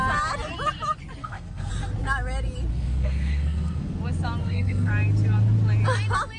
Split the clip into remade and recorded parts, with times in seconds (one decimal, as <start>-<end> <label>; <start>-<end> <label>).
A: 0.0-1.2 recorded; 1.2-1.7 remade; 1.7-2.7 recorded; 2.7-4.0 remade; 4.0-4.4 recorded; 4.4-4.9 remade; 4.9-6.4 recorded